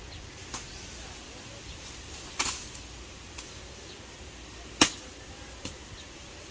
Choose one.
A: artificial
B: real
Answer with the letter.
B